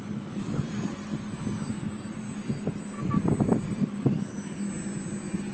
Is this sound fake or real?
real